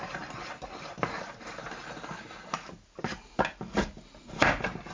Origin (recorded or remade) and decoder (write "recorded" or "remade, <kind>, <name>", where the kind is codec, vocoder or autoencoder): recorded